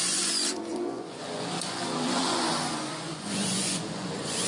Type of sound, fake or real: fake